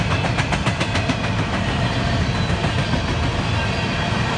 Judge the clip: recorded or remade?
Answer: recorded